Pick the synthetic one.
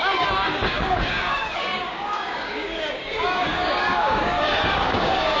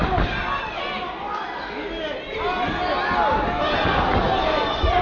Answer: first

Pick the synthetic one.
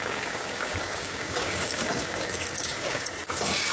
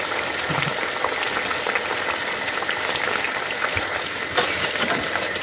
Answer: first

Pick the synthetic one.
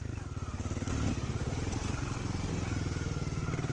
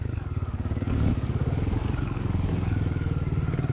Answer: second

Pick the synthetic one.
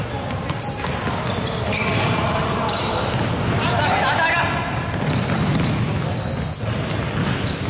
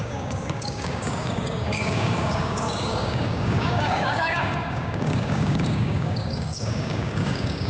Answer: second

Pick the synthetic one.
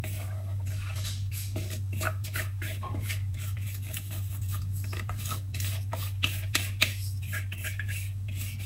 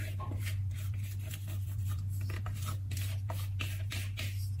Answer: first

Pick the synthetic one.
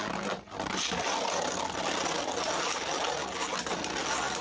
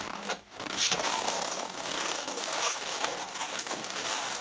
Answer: second